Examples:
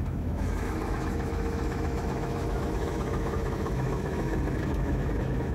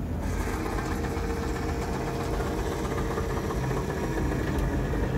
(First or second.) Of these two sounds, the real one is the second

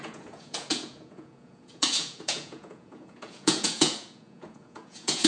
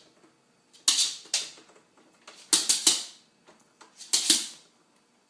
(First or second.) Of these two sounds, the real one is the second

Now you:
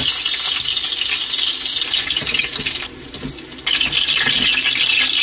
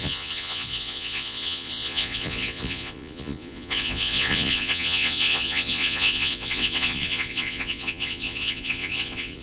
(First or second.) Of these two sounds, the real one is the first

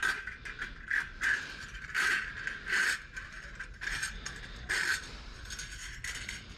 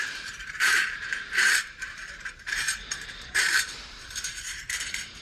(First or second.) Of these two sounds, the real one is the first